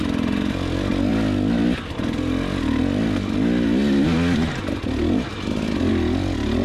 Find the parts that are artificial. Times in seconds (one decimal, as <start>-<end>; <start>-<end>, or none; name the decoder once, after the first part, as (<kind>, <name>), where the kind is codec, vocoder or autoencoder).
none